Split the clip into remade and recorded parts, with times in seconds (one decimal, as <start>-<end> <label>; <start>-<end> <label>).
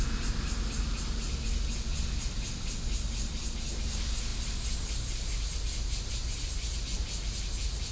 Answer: 0.0-7.9 recorded